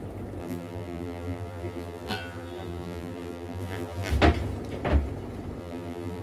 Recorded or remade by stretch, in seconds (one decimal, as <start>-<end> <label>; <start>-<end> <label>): 0.0-0.4 recorded; 0.4-4.1 remade; 4.1-5.6 recorded; 5.6-6.2 remade